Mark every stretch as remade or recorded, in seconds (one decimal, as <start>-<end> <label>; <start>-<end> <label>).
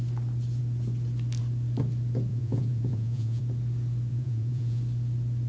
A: 0.0-2.3 recorded; 2.3-3.4 remade; 3.4-4.1 recorded; 4.1-4.8 remade; 4.8-5.5 recorded